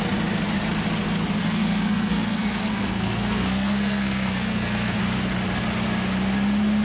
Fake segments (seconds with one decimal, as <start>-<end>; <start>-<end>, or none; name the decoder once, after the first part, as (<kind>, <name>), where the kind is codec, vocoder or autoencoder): 1.4-5.0 (codec, SNAC)